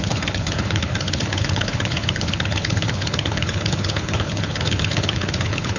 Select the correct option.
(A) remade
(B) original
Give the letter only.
A